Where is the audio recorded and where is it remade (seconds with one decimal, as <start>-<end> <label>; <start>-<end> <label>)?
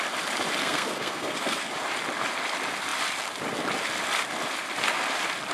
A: 0.0-0.6 recorded; 0.6-1.7 remade; 1.7-5.5 recorded